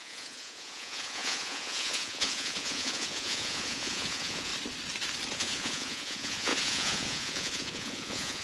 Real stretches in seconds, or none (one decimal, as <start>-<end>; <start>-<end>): 4.5-5.3